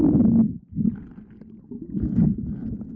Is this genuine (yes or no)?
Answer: yes